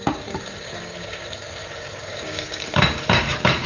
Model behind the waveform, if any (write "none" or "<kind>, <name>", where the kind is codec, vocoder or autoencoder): codec, DAC